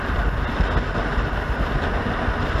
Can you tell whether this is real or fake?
real